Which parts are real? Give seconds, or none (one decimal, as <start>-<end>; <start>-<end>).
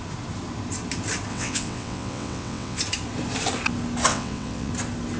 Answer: 0.0-1.3; 2.8-4.1; 4.7-5.2